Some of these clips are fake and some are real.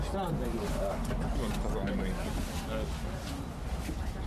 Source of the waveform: real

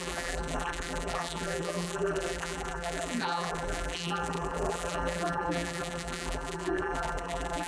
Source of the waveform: fake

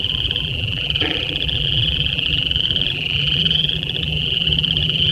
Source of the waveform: fake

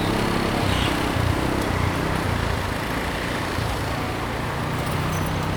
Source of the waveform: real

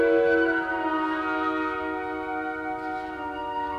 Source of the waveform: real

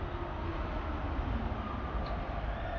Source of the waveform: real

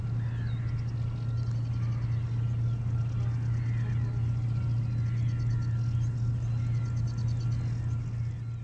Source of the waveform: real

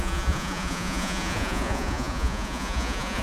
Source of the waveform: fake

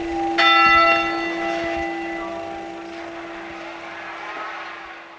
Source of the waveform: real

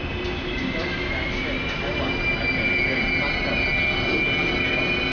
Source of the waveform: real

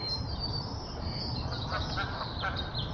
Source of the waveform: real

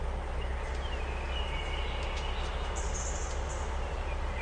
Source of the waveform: real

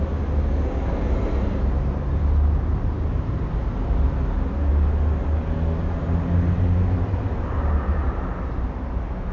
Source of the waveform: real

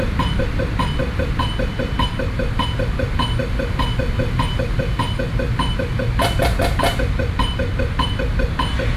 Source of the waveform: real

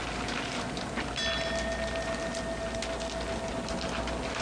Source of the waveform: real